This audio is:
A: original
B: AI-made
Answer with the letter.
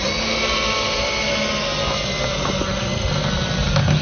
A